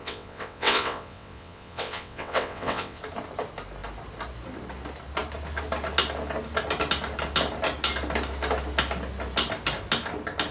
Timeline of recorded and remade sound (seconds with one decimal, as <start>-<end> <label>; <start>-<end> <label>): 0.0-3.0 remade; 3.0-10.5 recorded